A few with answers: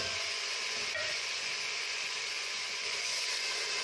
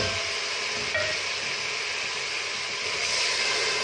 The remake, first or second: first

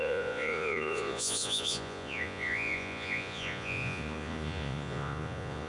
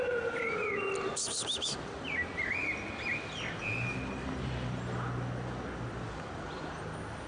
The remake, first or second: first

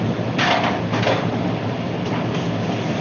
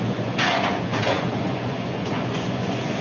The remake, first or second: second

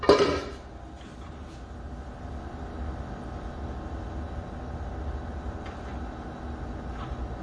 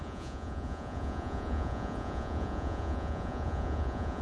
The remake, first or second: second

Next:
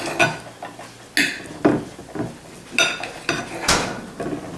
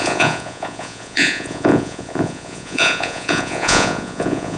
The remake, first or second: second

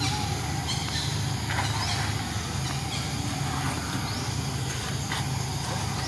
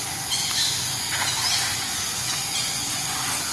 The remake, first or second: second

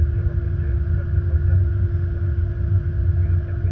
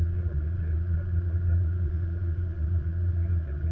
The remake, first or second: second